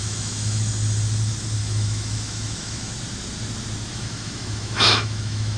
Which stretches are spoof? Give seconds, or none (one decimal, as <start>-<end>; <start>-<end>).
0.0-0.6; 1.6-2.9; 3.9-5.6